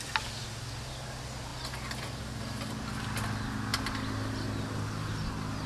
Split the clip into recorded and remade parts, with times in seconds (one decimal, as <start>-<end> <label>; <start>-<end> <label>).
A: 0.0-5.7 recorded

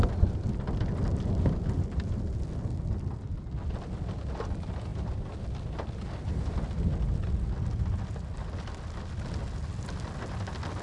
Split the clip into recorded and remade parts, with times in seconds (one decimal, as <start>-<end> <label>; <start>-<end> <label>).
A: 0.0-10.8 recorded

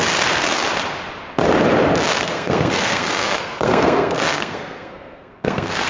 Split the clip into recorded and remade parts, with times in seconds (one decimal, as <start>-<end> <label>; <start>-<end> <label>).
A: 0.0-2.1 recorded; 2.1-5.9 remade

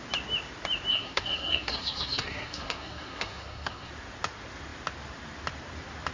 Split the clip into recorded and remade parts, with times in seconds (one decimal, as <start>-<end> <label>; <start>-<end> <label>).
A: 0.0-0.9 recorded; 0.9-3.9 remade; 3.9-6.1 recorded

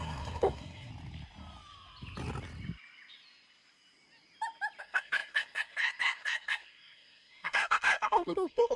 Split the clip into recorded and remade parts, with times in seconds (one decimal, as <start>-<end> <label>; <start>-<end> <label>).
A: 0.0-0.9 remade; 0.9-4.8 recorded; 4.8-8.8 remade

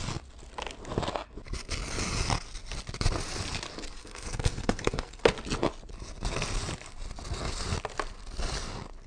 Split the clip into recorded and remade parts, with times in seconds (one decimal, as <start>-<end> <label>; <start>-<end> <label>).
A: 0.0-4.0 recorded; 4.0-5.2 remade; 5.2-9.1 recorded